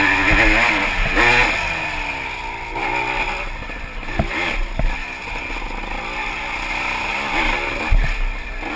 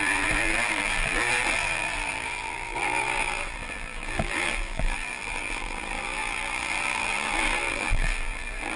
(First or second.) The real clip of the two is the first